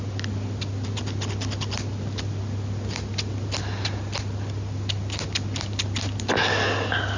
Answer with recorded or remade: recorded